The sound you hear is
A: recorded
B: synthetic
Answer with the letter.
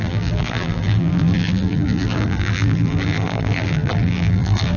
B